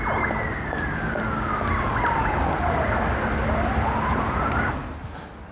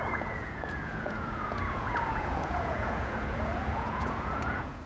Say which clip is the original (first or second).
first